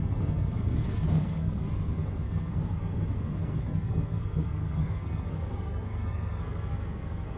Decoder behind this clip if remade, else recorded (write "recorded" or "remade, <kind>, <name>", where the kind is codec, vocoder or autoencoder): remade, codec, SNAC